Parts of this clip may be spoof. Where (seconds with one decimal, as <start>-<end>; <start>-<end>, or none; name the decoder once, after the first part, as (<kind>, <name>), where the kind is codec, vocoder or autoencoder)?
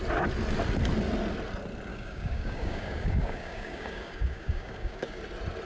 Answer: 1.9-5.2 (codec, DAC)